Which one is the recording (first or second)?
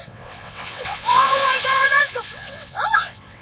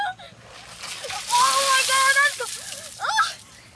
second